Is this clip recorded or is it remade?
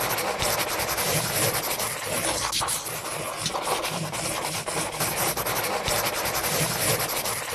recorded